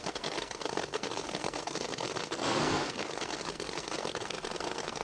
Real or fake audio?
fake